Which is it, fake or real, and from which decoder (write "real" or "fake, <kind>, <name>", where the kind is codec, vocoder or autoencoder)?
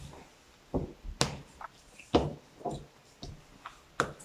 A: real